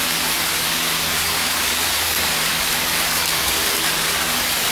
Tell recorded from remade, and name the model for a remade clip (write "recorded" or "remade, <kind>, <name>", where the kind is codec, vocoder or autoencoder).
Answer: remade, codec, DAC